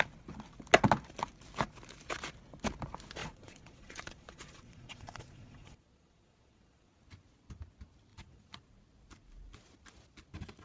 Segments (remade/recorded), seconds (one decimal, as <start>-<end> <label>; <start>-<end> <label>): 0.0-3.2 recorded; 3.2-7.0 remade; 7.0-8.1 recorded; 8.1-8.6 remade; 8.6-10.6 recorded